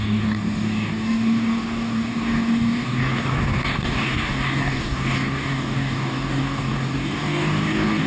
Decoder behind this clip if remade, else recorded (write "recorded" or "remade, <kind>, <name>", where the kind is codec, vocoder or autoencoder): remade, codec, DAC